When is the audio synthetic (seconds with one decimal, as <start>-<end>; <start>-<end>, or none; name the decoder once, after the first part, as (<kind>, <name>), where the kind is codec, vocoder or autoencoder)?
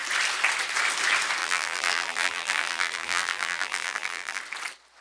1.4-4.4 (vocoder, BigVGAN v2)